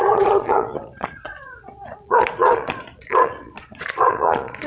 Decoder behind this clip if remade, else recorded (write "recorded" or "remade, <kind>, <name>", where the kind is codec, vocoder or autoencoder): remade, vocoder, Vocos